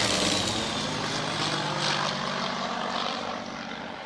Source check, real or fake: real